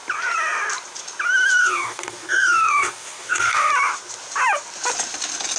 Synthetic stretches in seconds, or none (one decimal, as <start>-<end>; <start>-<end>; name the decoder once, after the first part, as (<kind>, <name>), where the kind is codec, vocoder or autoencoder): 1.6-3.7 (codec, DAC)